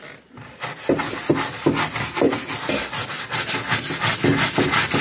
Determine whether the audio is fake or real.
real